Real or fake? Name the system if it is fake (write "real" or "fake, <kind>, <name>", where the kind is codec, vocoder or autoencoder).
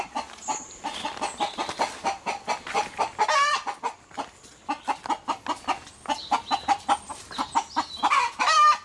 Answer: real